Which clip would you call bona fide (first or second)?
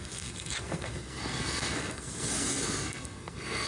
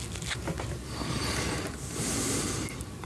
second